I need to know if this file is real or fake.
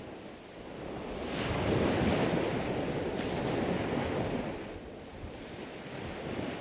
real